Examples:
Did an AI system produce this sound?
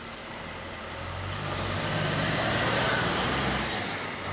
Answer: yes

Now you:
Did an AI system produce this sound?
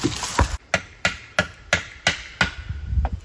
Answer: no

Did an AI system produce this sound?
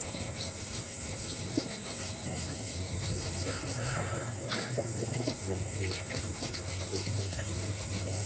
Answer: yes